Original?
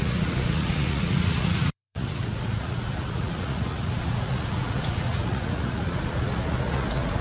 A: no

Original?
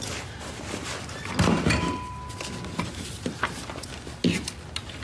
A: yes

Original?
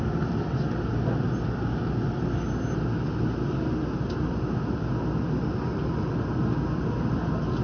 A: yes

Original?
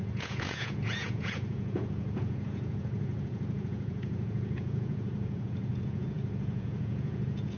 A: no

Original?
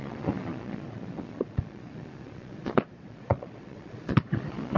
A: no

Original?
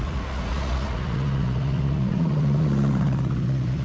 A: no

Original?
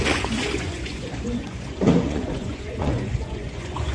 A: no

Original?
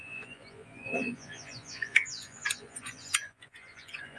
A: no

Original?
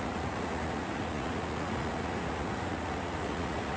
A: no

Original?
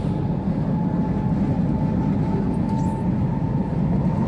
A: yes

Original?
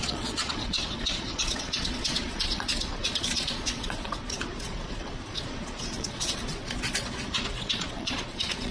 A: no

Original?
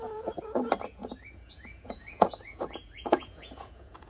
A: no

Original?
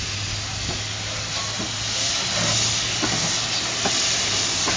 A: yes